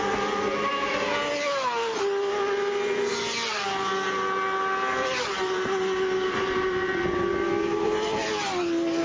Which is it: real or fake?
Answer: real